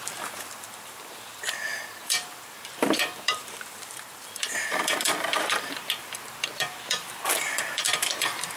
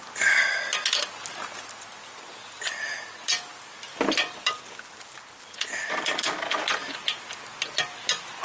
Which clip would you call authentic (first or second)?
second